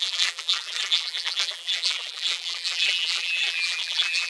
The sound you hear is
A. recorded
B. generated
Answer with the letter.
B